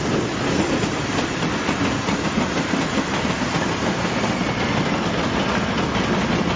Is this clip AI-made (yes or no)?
no